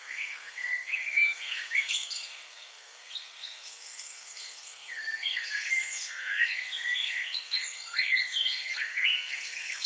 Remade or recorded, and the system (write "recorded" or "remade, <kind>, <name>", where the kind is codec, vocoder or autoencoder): remade, codec, SNAC